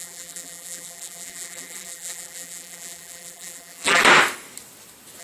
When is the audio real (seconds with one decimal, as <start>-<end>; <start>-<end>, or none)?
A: 4.0-5.2